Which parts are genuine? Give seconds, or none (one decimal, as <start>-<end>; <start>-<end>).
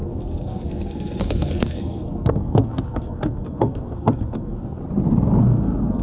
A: 4.8-5.4